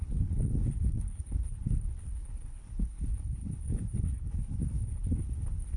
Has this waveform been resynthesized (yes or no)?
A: yes